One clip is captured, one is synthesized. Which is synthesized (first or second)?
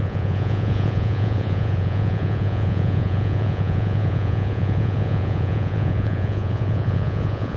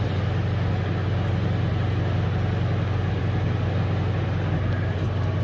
first